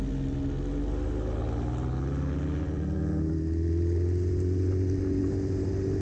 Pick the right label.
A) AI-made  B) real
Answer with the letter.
B